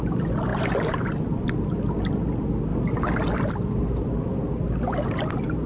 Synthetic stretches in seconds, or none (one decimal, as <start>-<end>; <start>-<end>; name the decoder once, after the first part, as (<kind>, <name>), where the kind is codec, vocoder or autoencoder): none